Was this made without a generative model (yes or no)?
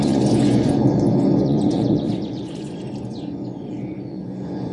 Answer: no